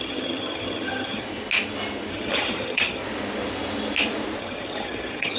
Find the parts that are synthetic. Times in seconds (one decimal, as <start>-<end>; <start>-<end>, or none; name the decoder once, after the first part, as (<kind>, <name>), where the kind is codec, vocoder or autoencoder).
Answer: 0.0-1.2 (vocoder, HiFi-GAN); 2.1-3.0; 4.4-5.4